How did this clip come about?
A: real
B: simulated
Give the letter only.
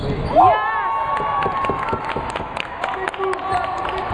A